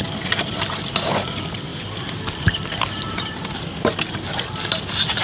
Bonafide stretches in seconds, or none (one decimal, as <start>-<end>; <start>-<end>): 0.0-5.2

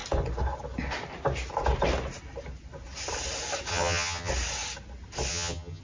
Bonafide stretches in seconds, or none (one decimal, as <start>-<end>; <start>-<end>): 0.0-3.7; 4.3-5.3